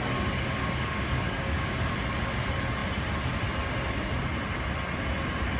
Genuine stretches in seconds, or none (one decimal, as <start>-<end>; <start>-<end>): 0.0-0.6; 1.8-5.6